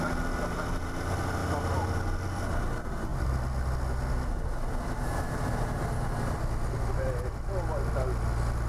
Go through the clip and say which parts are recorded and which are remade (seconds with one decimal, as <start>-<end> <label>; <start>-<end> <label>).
0.0-1.4 recorded; 1.4-2.0 remade; 2.0-8.7 recorded